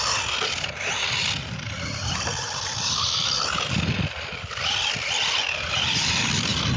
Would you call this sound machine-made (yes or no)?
no